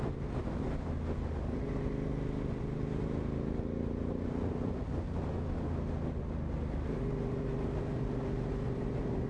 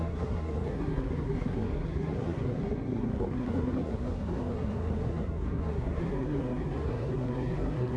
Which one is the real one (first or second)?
first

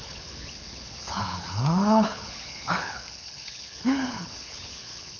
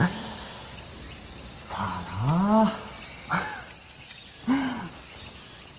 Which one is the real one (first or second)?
second